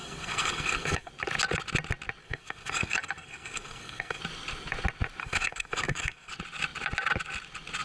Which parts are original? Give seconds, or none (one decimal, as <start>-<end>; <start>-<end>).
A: 1.1-2.2; 4.2-5.2; 6.3-7.8